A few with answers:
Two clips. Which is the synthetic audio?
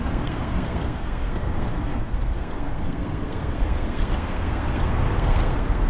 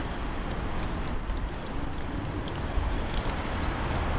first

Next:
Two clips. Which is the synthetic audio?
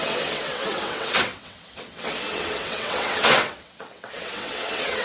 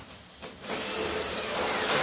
first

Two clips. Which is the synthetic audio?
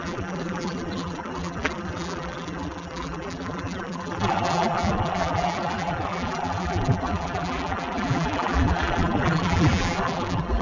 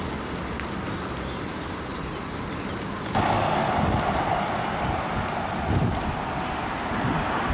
first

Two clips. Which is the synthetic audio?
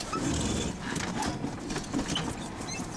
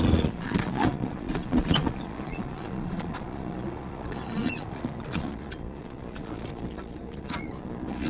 second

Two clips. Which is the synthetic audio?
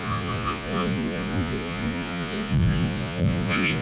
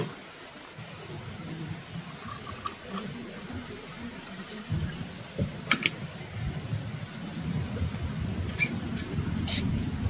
first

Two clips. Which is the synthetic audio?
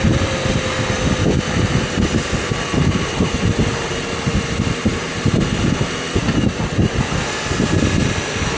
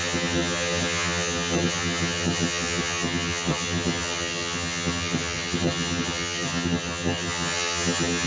second